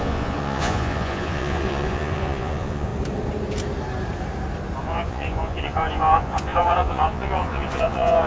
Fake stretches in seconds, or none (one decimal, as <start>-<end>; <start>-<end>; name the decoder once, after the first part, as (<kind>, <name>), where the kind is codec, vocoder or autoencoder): 0.0-2.9 (vocoder, Vocos); 4.8-8.3